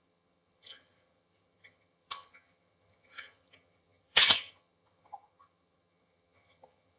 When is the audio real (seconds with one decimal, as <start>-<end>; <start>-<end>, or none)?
none